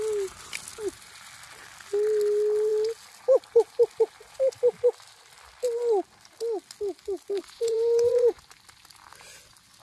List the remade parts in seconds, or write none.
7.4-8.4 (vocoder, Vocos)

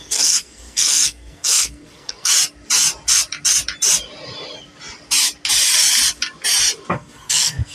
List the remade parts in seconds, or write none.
0.0-2.3 (codec, SNAC); 6.9-7.7

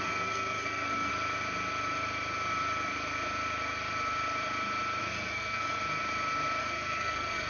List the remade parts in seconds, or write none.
0.0-1.1 (codec, SNAC); 5.0-5.8; 6.6-7.5

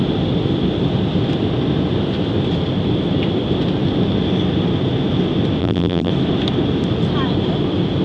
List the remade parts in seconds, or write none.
5.6-6.1 (vocoder, BigVGAN v2)

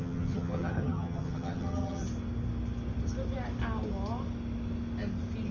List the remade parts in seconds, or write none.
0.0-2.0 (vocoder, HiFi-GAN)

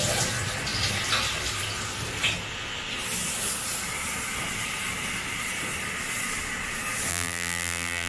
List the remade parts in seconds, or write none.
7.1-8.1 (vocoder, BigVGAN v2)

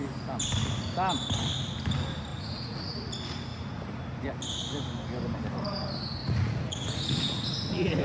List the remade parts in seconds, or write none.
2.3-3.1 (vocoder, Vocos); 3.5-4.0; 6.2-8.0

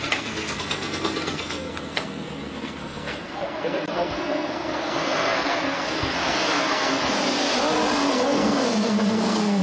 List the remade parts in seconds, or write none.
0.0-6.9 (codec, SNAC); 8.1-9.6